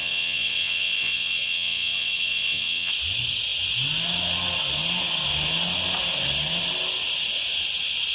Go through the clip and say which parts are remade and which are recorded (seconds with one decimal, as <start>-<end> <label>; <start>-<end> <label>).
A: 0.0-2.9 remade; 2.9-8.1 recorded